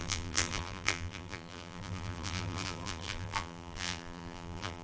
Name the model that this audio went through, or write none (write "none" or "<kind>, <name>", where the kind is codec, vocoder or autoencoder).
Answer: vocoder, BigVGAN v2